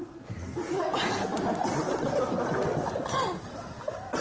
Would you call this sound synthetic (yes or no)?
no